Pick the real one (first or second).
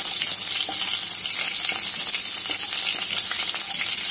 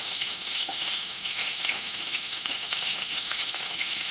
first